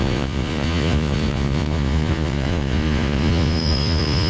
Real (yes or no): no